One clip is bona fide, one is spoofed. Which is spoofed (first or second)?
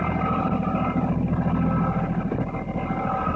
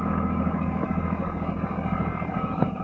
second